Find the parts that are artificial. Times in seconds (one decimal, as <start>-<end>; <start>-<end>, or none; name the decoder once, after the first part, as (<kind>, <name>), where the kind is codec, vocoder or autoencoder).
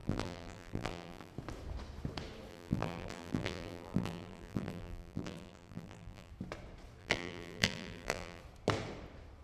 0.0-1.3 (vocoder, BigVGAN v2); 2.5-6.3; 7.0-8.4